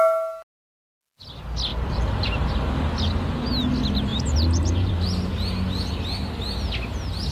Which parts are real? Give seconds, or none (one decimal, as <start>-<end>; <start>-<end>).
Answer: 0.0-1.7; 2.7-4.1; 5.0-7.3